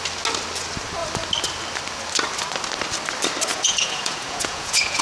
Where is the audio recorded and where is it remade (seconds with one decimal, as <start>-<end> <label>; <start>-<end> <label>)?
0.0-3.5 recorded; 3.5-5.0 remade